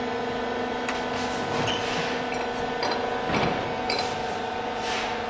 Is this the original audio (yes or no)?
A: yes